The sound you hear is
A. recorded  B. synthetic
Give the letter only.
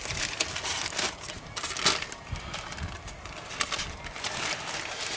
A